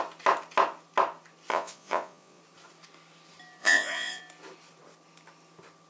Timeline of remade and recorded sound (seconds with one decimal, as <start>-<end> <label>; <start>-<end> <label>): 0.0-1.5 recorded; 1.5-2.4 remade; 2.4-3.6 recorded; 3.6-4.2 remade; 4.2-5.9 recorded